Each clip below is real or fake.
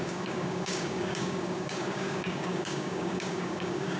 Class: fake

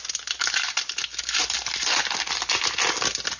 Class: real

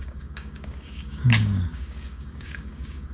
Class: fake